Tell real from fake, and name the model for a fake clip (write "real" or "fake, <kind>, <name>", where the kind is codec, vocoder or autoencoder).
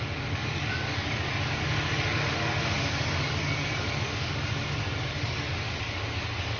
fake, codec, DAC